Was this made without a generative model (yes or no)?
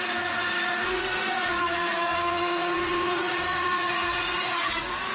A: no